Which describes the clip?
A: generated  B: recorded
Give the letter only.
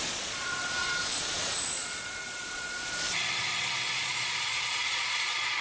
A